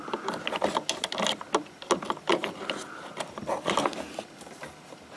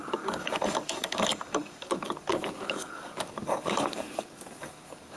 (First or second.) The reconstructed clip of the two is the second